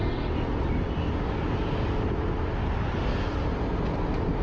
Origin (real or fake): real